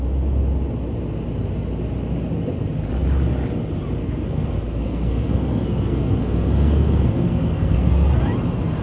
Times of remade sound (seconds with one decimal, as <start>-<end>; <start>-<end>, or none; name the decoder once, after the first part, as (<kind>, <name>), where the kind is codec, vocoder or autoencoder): 4.0-8.2 (codec, SNAC)